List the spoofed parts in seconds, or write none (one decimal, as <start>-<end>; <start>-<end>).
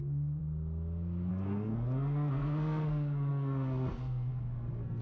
0.0-0.4; 1.3-5.0